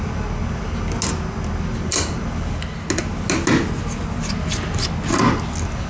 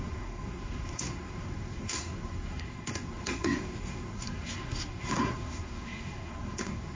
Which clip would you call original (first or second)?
first